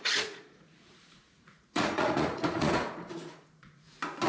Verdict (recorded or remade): remade